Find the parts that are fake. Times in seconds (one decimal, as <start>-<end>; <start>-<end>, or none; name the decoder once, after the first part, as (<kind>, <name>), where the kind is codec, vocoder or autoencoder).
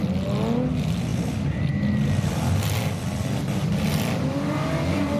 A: none